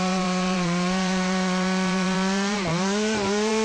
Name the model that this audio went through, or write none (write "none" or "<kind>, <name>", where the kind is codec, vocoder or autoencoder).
vocoder, BigVGAN v2